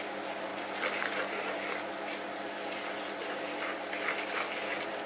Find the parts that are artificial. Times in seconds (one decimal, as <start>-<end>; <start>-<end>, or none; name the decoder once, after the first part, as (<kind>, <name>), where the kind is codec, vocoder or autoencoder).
none